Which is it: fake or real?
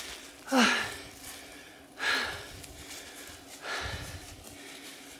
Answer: real